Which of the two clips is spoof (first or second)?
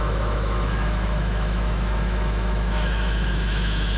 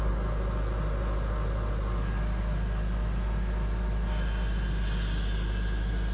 first